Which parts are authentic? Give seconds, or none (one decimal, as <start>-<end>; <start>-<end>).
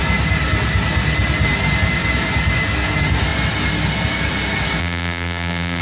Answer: 0.0-4.8